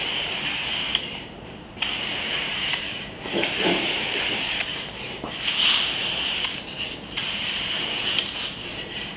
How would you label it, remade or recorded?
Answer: remade